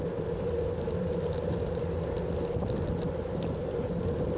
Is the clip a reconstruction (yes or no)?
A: yes